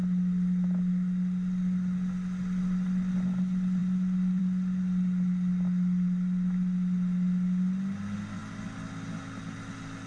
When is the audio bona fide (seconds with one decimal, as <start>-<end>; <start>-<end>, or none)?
0.0-10.1